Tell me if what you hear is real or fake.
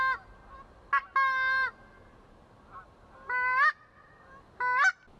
real